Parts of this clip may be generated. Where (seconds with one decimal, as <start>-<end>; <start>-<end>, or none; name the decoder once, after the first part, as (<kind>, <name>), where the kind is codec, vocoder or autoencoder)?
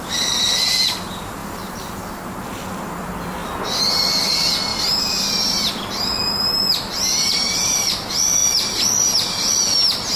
1.4-2.2 (vocoder, BigVGAN v2); 4.7-7.9